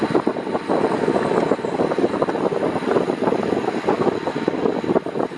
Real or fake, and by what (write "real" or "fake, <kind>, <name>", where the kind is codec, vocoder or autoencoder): real